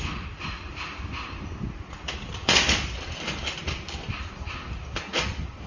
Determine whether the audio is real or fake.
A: real